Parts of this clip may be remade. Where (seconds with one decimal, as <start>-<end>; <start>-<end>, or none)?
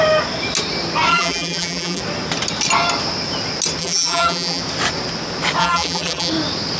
1.1-2.0; 3.8-4.6; 5.6-6.3